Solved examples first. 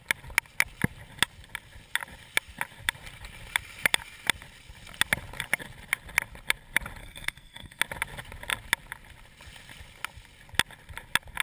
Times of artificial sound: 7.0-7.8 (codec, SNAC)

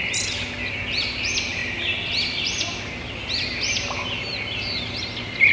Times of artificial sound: none

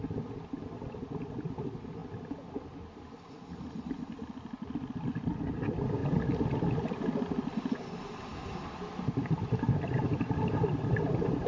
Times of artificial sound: none

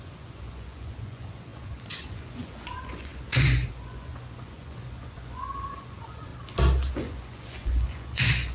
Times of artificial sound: 0.0-6.3 (vocoder, Vocos); 6.9-8.5

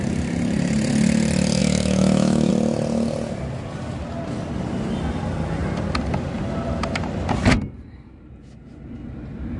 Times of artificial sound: 1.6-2.5 (autoencoder, DAC-VAE)